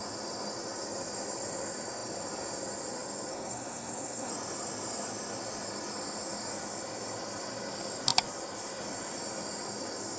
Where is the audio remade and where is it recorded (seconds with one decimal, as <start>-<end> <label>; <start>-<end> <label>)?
0.0-3.3 recorded; 3.3-4.3 remade; 4.3-10.2 recorded